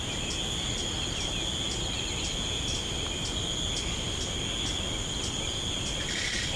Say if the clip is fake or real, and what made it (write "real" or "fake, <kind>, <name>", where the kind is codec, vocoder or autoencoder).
real